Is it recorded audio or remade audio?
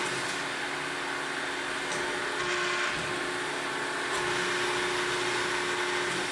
recorded